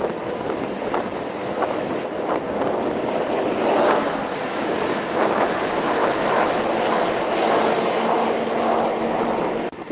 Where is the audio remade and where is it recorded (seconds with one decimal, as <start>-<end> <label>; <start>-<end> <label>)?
0.0-1.4 recorded; 1.4-1.9 remade; 1.9-6.0 recorded; 6.0-6.8 remade; 6.8-9.9 recorded